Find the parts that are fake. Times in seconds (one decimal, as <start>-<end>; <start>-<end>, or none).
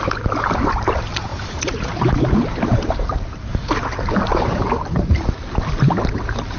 1.3-5.3